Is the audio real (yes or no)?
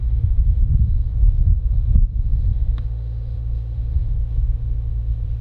no